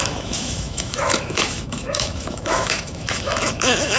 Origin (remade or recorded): remade